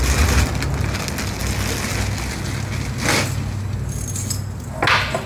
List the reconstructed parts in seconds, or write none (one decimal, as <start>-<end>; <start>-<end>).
none